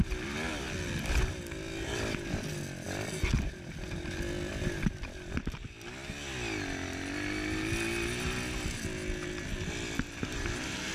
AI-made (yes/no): no